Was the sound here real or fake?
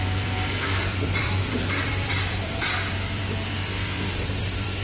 fake